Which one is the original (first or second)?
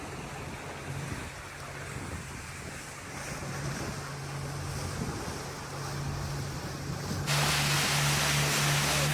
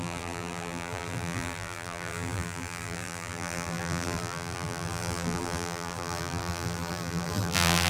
first